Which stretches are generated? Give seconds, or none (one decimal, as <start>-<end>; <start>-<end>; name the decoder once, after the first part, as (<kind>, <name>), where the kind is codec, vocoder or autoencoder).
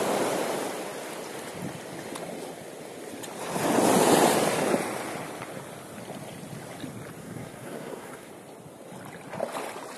7.2-8.3 (codec, SNAC)